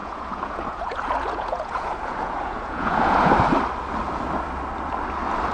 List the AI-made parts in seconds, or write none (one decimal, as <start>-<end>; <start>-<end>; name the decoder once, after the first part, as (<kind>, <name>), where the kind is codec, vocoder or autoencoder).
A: 0.0-3.3 (vocoder, Vocos)